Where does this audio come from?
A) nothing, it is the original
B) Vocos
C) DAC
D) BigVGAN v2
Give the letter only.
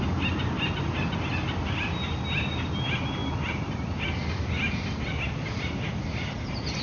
A